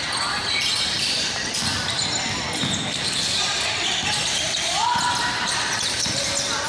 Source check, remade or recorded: remade